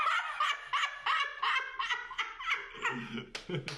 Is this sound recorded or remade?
recorded